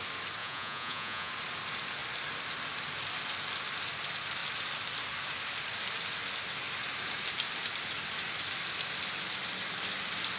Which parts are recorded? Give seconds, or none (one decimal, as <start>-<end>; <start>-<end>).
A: 0.0-0.4; 1.3-10.4